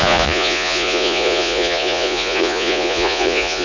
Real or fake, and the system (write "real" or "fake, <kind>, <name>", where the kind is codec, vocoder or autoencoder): fake, vocoder, Vocos